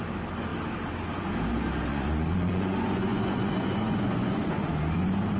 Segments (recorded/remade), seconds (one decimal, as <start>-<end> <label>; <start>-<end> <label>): 0.0-1.9 recorded; 1.9-4.7 remade; 4.7-5.4 recorded